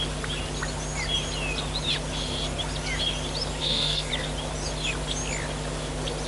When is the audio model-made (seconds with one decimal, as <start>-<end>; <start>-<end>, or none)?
3.6-4.1